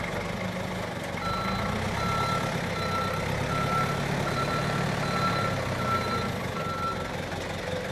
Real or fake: real